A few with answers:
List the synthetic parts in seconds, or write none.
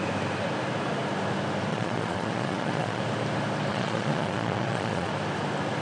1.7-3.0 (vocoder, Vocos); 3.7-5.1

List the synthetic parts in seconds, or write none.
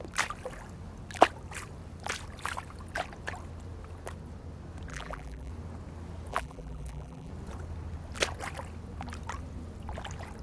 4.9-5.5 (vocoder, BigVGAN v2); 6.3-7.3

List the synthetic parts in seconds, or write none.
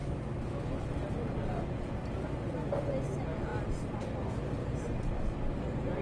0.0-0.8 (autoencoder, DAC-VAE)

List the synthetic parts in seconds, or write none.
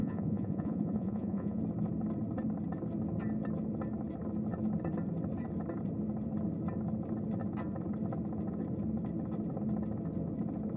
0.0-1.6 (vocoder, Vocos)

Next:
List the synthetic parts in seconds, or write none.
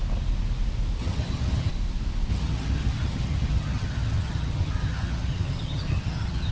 1.0-1.7 (vocoder, HiFi-GAN); 2.3-6.5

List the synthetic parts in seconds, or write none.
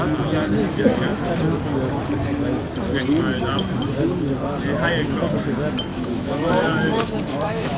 5.9-7.8 (autoencoder, DAC-VAE)